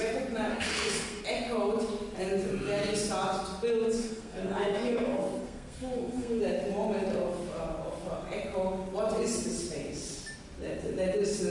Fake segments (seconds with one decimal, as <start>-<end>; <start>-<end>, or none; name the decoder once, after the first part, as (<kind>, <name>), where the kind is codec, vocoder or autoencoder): 0.5-1.2 (codec, SNAC); 4.0-6.4